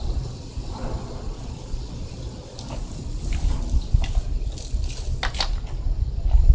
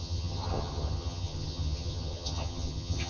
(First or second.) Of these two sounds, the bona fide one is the first